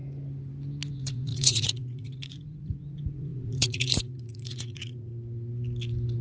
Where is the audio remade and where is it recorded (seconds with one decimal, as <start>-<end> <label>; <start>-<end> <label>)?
0.0-0.9 recorded; 0.9-5.1 remade; 5.1-6.2 recorded